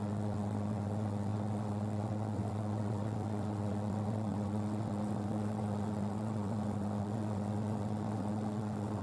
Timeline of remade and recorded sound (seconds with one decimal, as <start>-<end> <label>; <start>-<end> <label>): 0.0-9.0 remade